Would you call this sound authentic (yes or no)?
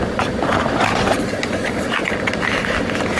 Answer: yes